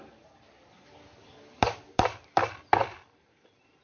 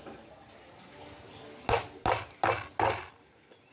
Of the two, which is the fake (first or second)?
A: first